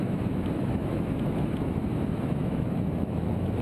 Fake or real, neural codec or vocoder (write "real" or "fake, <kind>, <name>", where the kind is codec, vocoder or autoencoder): fake, autoencoder, DAC-VAE